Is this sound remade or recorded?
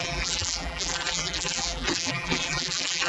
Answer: remade